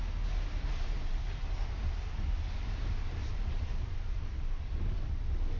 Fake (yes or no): no